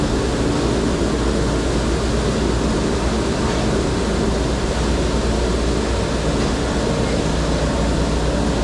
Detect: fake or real real